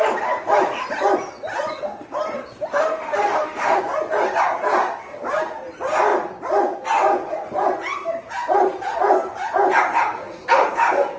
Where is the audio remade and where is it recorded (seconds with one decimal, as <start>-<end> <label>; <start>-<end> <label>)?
0.0-2.7 recorded; 2.7-3.8 remade; 3.8-11.2 recorded